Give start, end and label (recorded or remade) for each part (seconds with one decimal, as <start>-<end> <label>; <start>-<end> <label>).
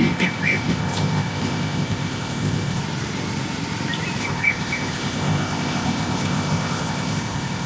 0.0-2.8 remade; 2.8-4.2 recorded; 4.2-7.7 remade